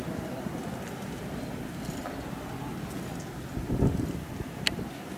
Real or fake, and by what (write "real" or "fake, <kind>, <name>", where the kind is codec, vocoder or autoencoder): real